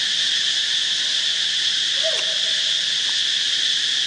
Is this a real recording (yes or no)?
yes